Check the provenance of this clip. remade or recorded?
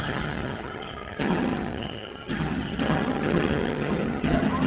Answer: remade